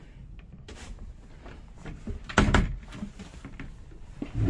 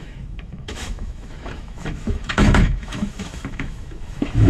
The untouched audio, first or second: first